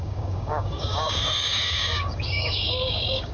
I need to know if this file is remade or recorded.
remade